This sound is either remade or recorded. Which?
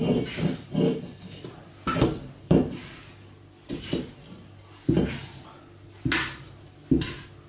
recorded